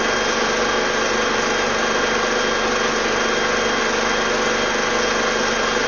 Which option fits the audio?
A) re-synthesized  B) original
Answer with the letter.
B